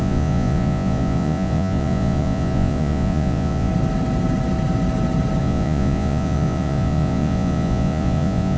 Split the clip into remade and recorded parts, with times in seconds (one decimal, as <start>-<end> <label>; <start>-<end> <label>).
0.0-3.7 remade; 3.7-5.4 recorded; 5.4-8.6 remade